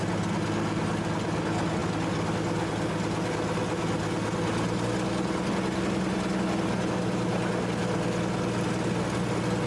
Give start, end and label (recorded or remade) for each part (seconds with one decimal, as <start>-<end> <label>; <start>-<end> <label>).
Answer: 0.0-9.7 recorded